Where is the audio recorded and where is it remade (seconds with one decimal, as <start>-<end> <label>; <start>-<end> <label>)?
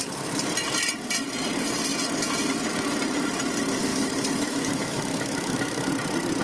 0.0-3.9 recorded; 3.9-5.9 remade; 5.9-6.4 recorded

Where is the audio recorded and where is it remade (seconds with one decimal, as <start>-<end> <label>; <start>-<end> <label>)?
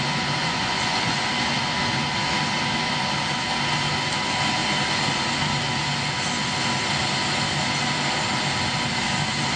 0.0-0.4 recorded; 0.4-1.3 remade; 1.3-9.6 recorded